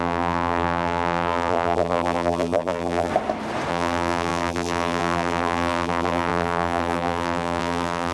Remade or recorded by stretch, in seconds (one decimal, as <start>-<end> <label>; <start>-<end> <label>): 0.0-3.1 remade; 3.1-3.7 recorded; 3.7-8.1 remade